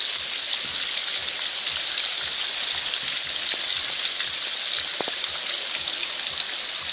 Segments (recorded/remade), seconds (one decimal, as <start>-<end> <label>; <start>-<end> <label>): 0.0-6.9 recorded